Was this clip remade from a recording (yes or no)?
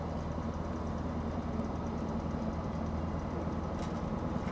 yes